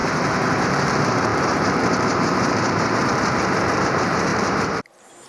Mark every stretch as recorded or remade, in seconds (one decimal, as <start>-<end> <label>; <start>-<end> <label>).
0.0-0.6 recorded; 0.6-5.3 remade